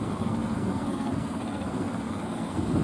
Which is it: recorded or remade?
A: remade